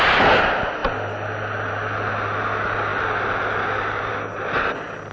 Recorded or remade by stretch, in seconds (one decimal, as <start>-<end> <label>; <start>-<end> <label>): 0.0-5.1 recorded